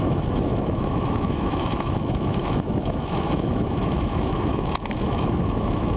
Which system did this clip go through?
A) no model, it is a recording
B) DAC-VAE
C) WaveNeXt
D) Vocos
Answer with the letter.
B